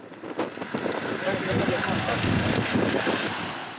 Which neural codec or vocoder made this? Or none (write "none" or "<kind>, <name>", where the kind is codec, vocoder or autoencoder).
none